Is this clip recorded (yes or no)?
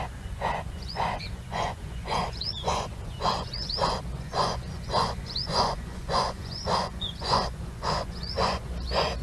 no